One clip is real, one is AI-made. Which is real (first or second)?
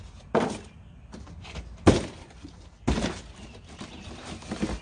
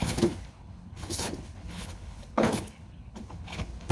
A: first